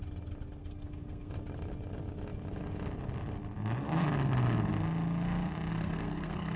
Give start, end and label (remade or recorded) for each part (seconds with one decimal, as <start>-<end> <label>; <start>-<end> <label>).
0.0-0.6 recorded; 0.6-1.3 remade; 1.3-5.7 recorded; 5.7-6.6 remade